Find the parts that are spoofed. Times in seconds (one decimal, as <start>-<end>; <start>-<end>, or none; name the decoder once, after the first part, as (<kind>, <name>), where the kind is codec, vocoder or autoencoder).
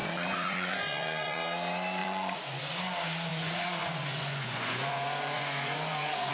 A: 0.0-1.4 (vocoder, Vocos); 2.0-2.6; 3.3-6.3